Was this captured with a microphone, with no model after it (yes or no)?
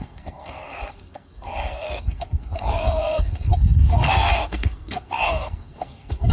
no